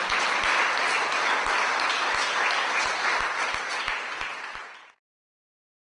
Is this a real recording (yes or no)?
yes